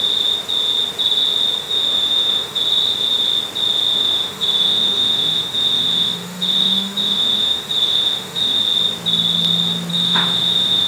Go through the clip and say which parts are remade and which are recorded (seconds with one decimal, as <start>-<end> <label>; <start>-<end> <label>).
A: 0.0-1.6 recorded; 1.6-2.6 remade; 2.6-4.0 recorded; 4.0-8.6 remade; 8.6-9.9 recorded; 9.9-10.9 remade